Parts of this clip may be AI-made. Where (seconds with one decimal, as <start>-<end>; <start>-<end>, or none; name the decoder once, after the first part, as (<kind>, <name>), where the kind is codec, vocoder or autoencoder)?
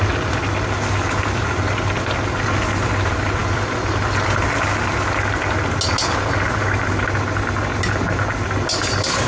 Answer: 3.4-4.4 (vocoder, BigVGAN v2)